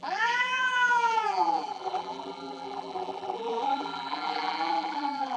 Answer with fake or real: fake